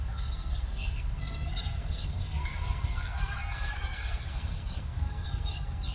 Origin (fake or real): fake